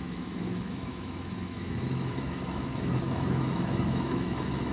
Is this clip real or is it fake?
fake